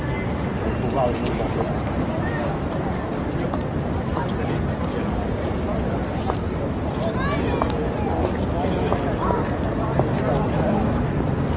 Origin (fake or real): real